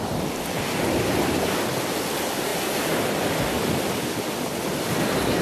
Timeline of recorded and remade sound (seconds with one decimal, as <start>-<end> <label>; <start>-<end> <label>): 0.0-5.4 recorded